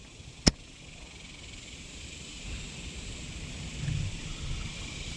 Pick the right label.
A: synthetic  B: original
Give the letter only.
B